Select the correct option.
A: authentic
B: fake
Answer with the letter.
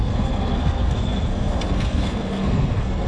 B